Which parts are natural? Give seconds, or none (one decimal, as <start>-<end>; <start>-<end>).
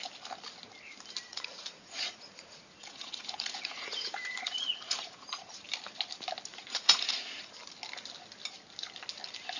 0.0-1.3; 5.5-6.5; 7.5-9.6